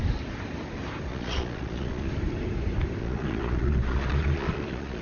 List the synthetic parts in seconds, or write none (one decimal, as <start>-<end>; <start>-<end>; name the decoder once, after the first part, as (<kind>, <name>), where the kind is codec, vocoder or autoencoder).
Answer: 1.1-2.1 (vocoder, Vocos); 3.0-5.0